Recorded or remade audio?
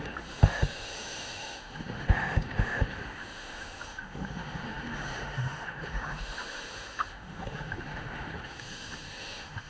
remade